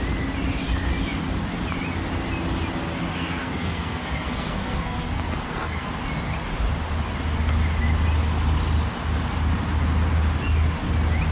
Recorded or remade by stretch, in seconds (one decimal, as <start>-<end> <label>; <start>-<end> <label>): 0.0-3.1 recorded; 3.1-5.9 remade; 5.9-11.3 recorded

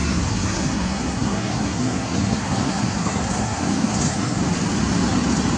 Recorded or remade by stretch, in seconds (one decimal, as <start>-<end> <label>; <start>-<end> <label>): 0.0-4.4 remade; 4.4-5.6 recorded

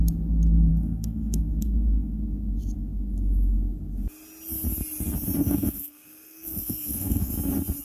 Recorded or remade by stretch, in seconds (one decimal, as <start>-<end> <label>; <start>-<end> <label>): 0.0-0.7 recorded; 0.7-2.2 remade; 2.2-5.4 recorded; 5.4-7.3 remade; 7.3-7.8 recorded